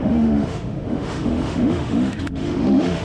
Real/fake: fake